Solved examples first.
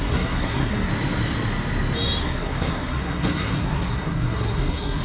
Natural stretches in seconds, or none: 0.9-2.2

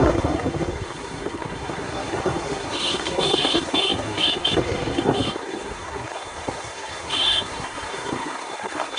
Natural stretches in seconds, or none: none

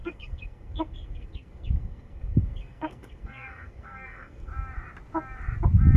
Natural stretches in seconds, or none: 4.5-6.0

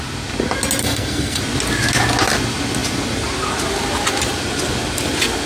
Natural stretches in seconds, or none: 0.0-0.8; 1.4-5.5

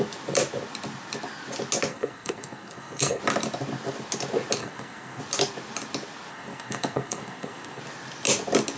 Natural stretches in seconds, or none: 0.0-1.9; 3.2-4.6; 5.2-6.3; 7.8-8.8

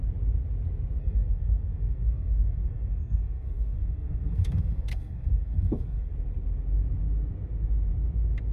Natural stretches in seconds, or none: 0.0-1.0; 6.1-8.5